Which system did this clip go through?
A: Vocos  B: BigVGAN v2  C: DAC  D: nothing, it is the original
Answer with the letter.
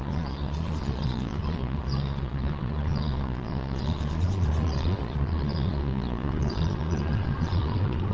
A